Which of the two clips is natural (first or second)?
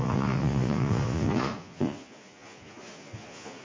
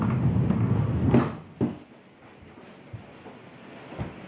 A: second